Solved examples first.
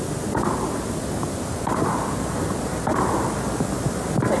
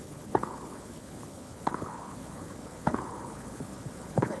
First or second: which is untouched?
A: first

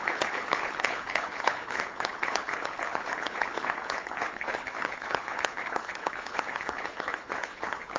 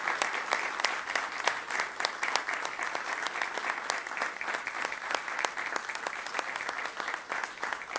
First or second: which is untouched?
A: second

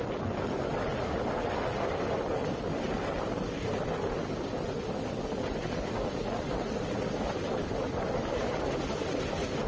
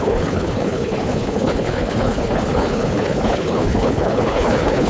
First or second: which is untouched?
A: first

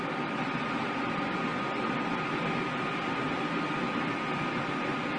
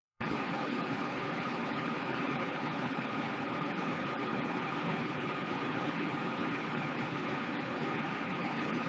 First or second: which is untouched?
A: first